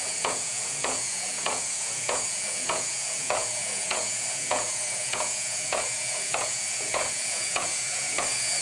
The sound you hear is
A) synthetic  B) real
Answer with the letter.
A